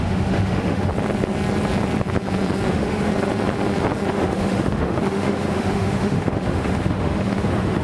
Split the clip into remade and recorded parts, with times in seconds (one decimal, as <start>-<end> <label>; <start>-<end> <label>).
0.0-0.9 remade; 0.9-2.7 recorded; 2.7-3.1 remade; 3.1-4.1 recorded; 4.1-7.8 remade